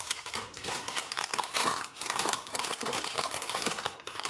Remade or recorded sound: remade